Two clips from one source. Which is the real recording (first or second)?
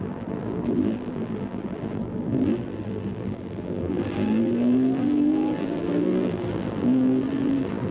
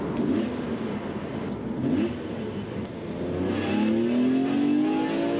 second